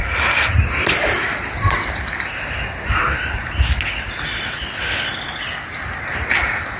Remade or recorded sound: recorded